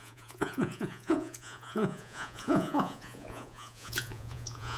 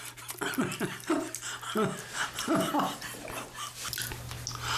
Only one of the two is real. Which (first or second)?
second